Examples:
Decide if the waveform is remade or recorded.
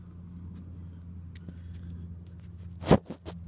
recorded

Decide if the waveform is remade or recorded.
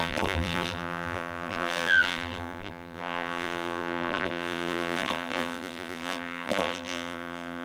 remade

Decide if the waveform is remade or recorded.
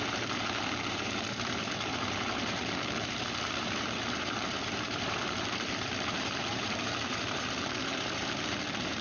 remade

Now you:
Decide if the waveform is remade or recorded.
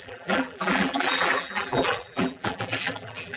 remade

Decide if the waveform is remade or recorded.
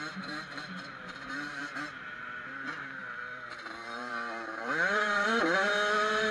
remade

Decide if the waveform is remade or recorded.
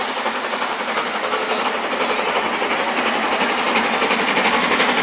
recorded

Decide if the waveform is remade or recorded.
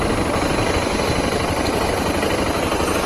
recorded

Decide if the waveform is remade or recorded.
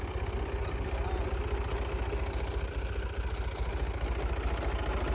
recorded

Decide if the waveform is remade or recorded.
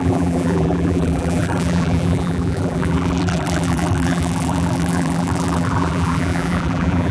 remade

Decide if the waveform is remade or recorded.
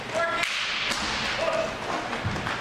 recorded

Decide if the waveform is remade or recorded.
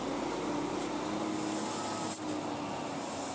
recorded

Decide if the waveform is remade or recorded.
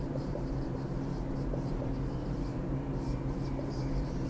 remade